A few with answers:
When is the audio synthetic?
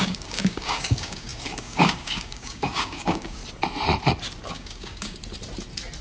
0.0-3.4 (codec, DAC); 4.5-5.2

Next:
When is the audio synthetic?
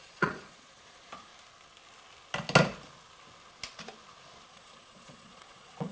0.0-1.3 (vocoder, Vocos); 4.5-5.9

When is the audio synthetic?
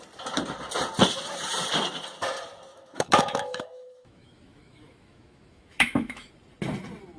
2.7-6.3 (autoencoder, DAC-VAE)